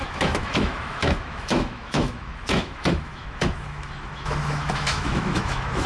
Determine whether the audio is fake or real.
fake